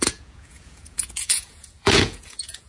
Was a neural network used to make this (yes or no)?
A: yes